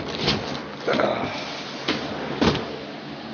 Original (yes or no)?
yes